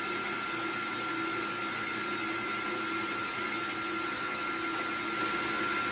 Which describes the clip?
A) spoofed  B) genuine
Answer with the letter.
B